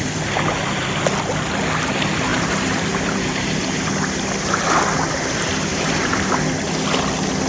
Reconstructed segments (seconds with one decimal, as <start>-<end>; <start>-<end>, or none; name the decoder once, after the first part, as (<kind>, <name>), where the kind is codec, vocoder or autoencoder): 2.3-3.9 (vocoder, BigVGAN v2); 5.7-6.3